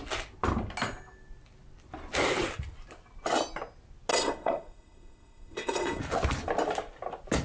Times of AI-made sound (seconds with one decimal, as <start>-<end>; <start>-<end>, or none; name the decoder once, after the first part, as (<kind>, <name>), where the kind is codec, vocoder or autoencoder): 4.1-6.0 (codec, SNAC)